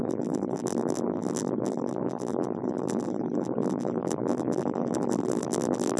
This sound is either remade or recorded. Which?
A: remade